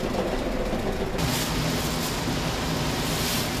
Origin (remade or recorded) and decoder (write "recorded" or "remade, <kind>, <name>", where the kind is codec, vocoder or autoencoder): recorded